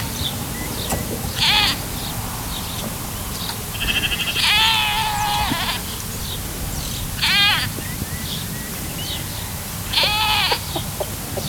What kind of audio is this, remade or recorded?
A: recorded